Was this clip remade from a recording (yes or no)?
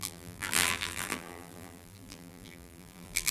yes